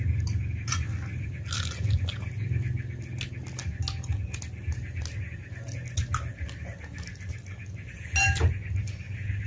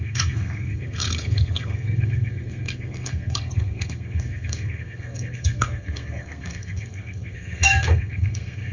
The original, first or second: first